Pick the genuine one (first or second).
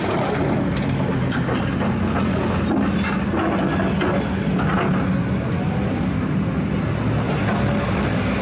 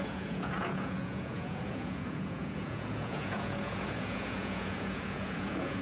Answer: first